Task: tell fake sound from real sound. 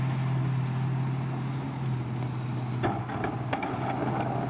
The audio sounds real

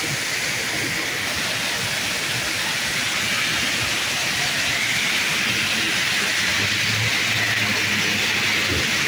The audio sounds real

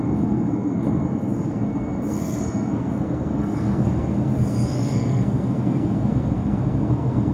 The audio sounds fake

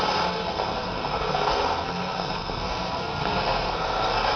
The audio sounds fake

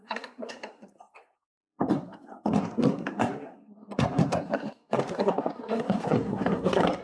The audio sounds fake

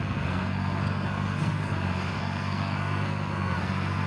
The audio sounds fake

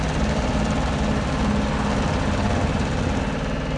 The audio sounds real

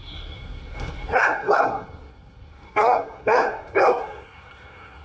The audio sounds fake